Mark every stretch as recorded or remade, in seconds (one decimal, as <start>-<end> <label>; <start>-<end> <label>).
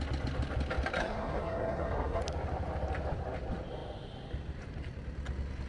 0.0-1.0 recorded; 1.0-2.2 remade; 2.2-5.7 recorded